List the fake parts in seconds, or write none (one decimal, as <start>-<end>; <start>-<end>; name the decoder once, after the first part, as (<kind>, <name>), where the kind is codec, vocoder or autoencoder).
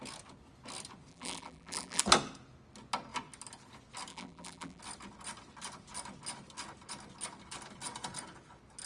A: 1.1-2.0 (vocoder, BigVGAN v2); 4.1-4.8